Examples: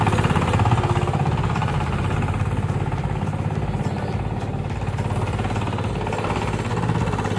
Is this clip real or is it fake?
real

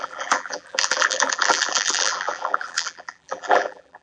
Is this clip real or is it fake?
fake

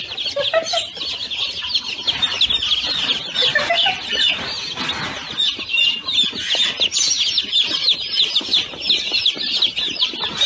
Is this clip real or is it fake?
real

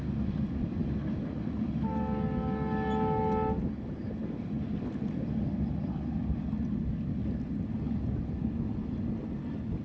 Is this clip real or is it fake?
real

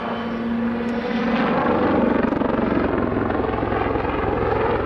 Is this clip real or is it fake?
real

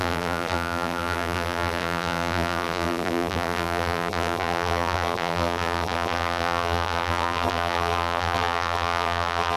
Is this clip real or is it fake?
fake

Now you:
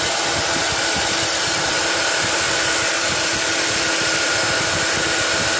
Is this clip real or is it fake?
real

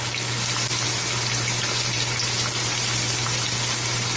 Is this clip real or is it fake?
real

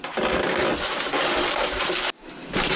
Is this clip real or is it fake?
real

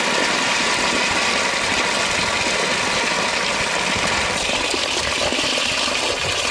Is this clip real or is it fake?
real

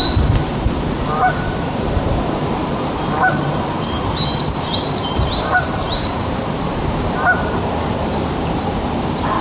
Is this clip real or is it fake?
fake